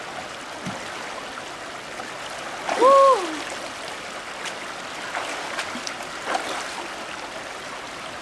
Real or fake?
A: real